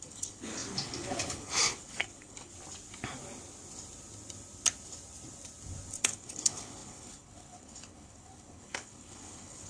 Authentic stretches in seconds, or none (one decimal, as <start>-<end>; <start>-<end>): 2.5-6.0